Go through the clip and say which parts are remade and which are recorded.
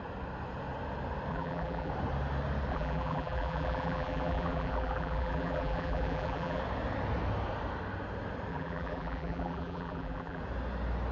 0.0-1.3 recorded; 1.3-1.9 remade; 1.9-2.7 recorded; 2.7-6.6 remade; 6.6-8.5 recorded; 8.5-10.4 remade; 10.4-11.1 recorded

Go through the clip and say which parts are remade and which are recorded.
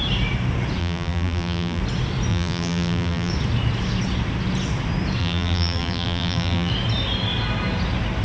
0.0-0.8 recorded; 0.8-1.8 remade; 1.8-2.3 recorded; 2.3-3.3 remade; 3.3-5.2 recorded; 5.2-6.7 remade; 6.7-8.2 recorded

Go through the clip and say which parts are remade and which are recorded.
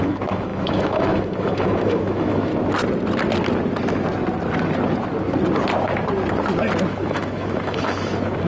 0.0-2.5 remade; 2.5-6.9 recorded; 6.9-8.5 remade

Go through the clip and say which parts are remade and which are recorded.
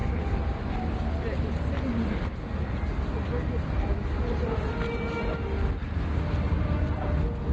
0.0-7.5 recorded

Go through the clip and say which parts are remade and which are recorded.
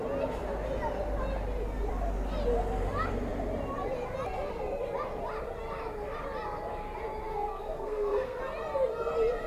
0.0-7.3 recorded; 7.3-8.4 remade; 8.4-9.5 recorded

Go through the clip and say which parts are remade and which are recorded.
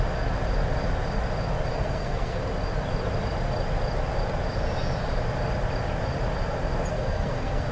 0.0-1.7 recorded; 1.7-2.4 remade; 2.4-6.9 recorded; 6.9-7.7 remade